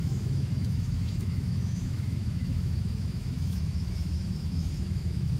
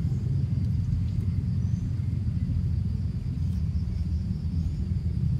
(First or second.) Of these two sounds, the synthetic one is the first